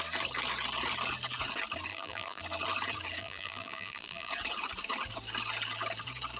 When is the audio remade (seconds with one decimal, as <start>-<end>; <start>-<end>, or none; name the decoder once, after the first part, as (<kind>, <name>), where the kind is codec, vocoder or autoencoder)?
1.9-2.4 (vocoder, BigVGAN v2); 3.2-4.3

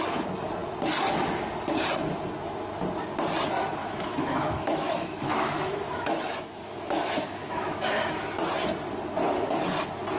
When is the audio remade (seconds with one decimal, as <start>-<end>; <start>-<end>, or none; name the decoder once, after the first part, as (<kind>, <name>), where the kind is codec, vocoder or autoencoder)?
3.8-8.4 (autoencoder, DAC-VAE)